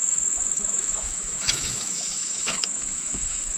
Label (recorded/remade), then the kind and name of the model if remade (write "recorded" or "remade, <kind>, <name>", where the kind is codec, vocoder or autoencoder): remade, autoencoder, DAC-VAE